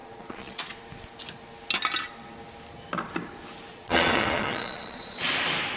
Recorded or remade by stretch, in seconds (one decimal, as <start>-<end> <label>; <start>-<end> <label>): 0.0-0.8 remade; 0.8-3.7 recorded; 3.7-5.3 remade; 5.3-5.8 recorded